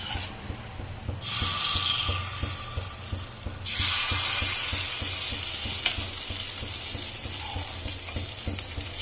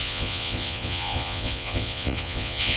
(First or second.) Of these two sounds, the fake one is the second